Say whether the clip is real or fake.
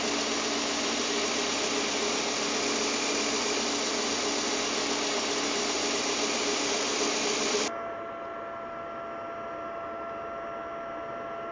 real